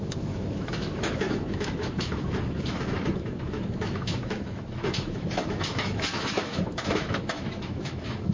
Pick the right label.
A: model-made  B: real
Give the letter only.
A